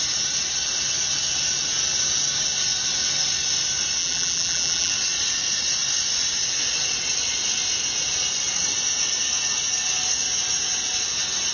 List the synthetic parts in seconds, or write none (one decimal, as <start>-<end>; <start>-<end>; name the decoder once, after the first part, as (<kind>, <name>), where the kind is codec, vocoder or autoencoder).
4.0-4.9 (vocoder, BigVGAN v2)